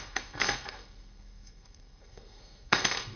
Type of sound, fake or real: fake